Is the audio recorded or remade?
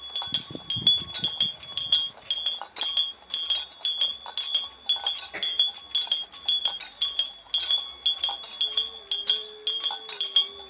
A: recorded